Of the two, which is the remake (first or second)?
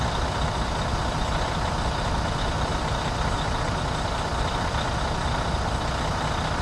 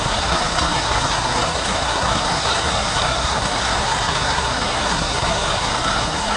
second